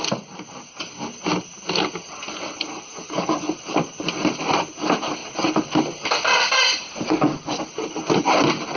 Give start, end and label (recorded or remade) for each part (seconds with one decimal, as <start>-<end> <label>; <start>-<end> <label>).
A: 0.0-8.8 recorded